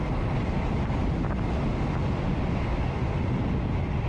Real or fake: real